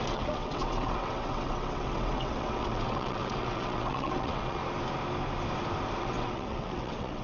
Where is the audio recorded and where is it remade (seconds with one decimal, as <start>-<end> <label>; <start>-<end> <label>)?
0.0-4.6 remade; 4.6-6.0 recorded; 6.0-7.2 remade